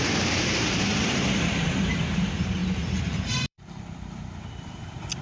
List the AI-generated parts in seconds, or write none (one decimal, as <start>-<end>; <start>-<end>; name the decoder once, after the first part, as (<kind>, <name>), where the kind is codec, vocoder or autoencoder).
0.0-0.9 (vocoder, BigVGAN v2); 1.4-5.2